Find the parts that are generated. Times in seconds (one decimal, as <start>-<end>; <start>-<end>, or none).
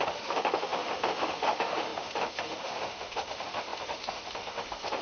0.0-5.0